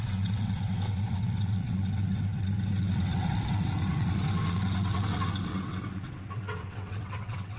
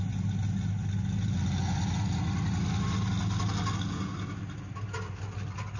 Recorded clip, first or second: second